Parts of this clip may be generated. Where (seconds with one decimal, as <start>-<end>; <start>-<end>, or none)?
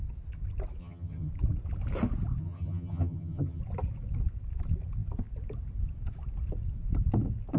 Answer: 0.8-1.3; 2.4-3.6